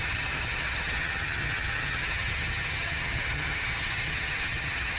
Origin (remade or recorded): remade